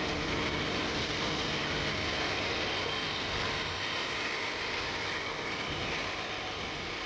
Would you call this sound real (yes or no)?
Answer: yes